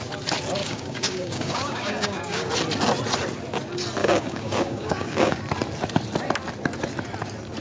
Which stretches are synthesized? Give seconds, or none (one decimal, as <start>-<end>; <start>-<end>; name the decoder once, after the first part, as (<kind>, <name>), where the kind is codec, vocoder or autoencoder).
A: 0.6-2.5 (codec, DAC); 4.0-5.4

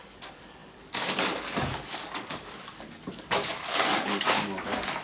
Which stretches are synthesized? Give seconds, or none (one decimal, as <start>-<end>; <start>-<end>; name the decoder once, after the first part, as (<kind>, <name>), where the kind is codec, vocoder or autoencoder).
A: 0.0-5.0 (codec, DAC)

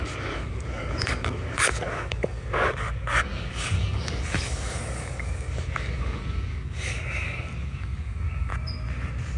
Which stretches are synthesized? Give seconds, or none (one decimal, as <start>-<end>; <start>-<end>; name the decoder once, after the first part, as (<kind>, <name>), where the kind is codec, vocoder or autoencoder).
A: 0.0-8.5 (codec, DAC)

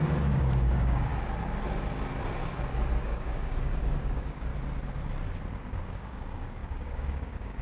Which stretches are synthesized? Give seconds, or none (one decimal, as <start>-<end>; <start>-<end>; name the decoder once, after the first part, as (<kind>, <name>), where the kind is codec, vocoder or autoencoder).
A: 0.0-1.1 (codec, DAC); 3.0-4.5; 5.8-7.6

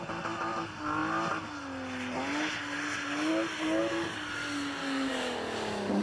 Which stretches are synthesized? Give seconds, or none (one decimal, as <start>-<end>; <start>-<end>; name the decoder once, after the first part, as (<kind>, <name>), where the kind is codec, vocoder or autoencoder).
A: 4.8-6.0 (codec, DAC)

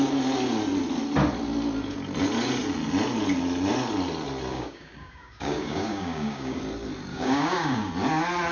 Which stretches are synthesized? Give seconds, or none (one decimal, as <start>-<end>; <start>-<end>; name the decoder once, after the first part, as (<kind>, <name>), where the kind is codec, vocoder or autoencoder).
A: 4.5-6.6 (codec, DAC); 7.1-7.9

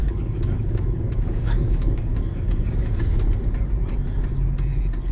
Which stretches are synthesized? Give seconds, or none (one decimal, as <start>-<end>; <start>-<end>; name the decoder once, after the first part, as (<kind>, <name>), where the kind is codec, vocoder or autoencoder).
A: 0.0-2.9 (codec, DAC)

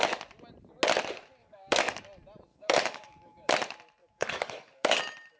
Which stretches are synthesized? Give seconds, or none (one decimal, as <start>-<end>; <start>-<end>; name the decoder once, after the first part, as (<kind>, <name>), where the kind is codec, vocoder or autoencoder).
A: 1.4-2.0 (codec, DAC); 2.5-3.5; 4.0-5.0